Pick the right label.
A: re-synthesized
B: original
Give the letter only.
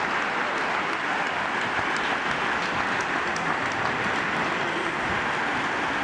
B